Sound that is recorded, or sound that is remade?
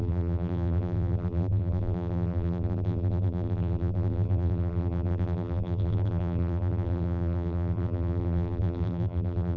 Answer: remade